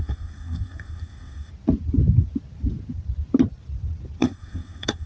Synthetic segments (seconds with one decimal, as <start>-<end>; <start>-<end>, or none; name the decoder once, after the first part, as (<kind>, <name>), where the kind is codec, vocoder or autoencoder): 0.0-1.5 (codec, SNAC); 4.2-5.1